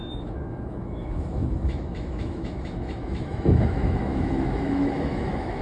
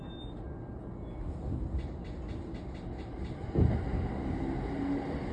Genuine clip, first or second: second